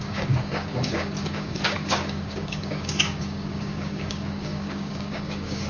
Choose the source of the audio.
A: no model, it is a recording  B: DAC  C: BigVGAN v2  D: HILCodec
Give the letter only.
B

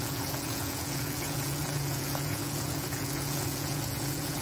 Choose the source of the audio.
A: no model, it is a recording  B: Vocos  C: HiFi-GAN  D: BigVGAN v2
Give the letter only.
B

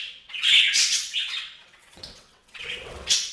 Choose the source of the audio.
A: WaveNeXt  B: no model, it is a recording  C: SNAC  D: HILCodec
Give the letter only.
A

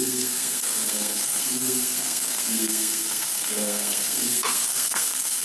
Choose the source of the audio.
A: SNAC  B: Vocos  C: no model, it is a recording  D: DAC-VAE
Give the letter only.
A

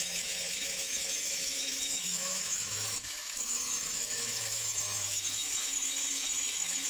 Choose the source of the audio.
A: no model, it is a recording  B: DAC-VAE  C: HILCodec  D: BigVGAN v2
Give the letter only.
B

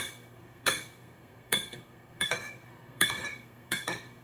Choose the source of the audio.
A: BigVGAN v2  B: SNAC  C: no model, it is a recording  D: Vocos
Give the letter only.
B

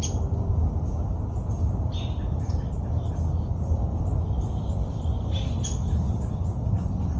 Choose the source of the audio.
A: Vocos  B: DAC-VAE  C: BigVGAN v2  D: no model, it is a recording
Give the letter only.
D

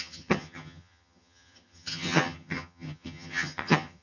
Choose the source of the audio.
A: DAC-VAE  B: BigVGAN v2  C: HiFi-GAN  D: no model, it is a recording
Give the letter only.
C